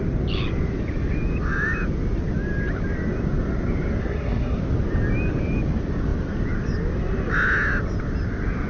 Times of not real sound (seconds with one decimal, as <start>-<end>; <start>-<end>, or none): 4.0-4.6